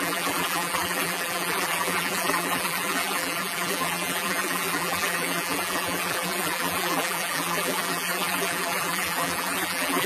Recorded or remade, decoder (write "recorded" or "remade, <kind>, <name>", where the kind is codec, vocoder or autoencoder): remade, vocoder, BigVGAN v2